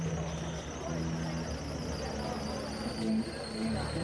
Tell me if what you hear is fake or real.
real